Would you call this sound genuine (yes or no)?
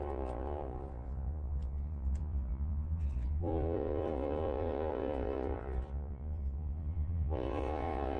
no